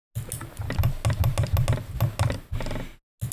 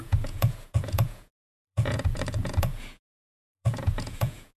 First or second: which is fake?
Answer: second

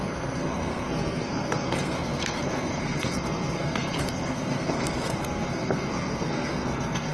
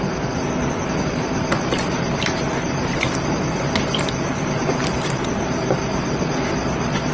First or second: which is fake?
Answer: first